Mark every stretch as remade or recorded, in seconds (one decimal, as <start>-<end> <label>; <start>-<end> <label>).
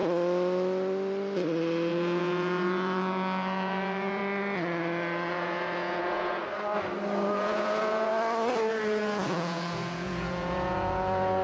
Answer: 0.0-1.9 recorded; 1.9-4.2 remade; 4.2-5.3 recorded; 5.3-6.4 remade; 6.4-7.3 recorded; 7.3-8.1 remade; 8.1-8.7 recorded; 8.7-11.4 remade